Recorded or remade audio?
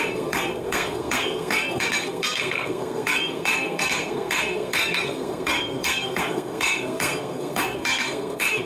remade